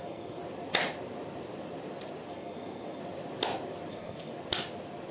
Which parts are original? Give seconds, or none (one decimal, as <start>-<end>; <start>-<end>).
0.4-2.3; 3.0-3.9; 4.3-5.1